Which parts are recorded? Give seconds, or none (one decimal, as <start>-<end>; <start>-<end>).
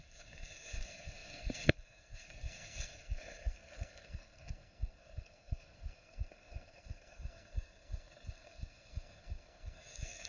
none